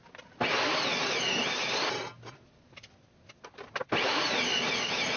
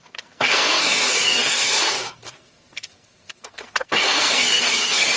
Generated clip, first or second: second